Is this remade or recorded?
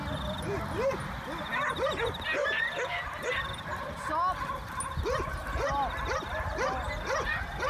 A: recorded